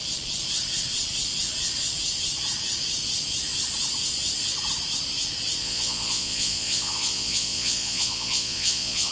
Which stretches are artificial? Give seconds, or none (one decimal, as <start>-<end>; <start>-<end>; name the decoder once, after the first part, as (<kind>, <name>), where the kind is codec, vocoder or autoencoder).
5.6-9.1 (vocoder, Vocos)